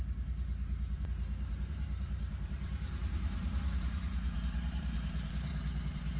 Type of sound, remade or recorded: remade